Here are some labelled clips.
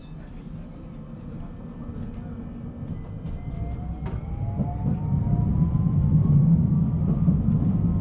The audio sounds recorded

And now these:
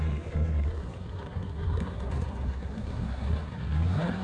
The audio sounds remade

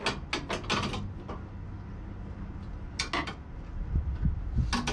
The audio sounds recorded